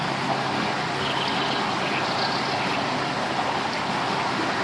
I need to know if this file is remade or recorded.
recorded